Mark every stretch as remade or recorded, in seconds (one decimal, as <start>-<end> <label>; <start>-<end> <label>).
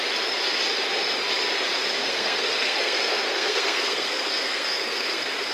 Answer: 0.0-2.0 recorded; 2.0-5.5 remade